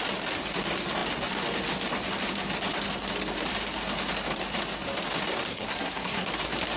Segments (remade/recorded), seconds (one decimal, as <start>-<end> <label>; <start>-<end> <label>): 0.0-5.5 recorded; 5.5-6.3 remade; 6.3-6.8 recorded